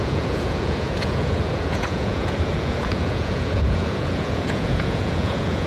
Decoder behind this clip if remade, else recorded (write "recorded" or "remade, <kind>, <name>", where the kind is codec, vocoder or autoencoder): remade, vocoder, Vocos